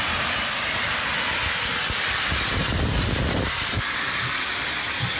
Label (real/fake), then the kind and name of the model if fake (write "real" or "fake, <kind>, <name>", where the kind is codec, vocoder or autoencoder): fake, vocoder, BigVGAN v2